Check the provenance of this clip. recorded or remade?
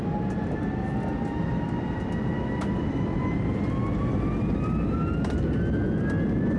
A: recorded